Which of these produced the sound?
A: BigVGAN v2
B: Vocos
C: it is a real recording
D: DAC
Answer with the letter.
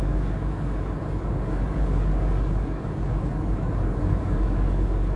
D